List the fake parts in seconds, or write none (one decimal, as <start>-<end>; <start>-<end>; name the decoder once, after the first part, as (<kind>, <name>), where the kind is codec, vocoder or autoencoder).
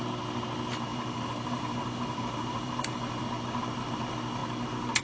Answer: 0.9-3.2 (vocoder, BigVGAN v2)